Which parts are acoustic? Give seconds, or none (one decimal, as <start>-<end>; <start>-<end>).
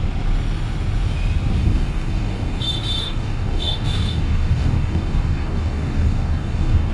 0.0-1.6; 2.6-3.0